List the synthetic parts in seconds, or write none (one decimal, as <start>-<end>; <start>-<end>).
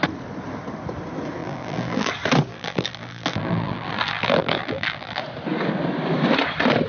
1.4-2.1; 2.5-5.2